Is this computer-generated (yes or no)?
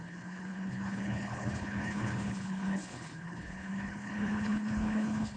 yes